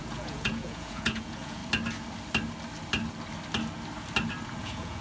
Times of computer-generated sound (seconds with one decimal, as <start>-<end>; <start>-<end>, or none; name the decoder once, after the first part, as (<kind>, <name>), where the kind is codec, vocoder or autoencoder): 0.0-1.6 (vocoder, Vocos); 4.6-5.0